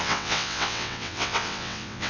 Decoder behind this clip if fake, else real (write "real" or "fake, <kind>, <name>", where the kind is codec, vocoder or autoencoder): fake, vocoder, WaveNeXt